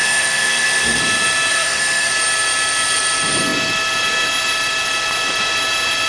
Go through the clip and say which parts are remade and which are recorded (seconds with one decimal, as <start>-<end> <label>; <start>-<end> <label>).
0.0-1.0 remade; 1.0-1.5 recorded; 1.5-2.1 remade; 2.1-6.1 recorded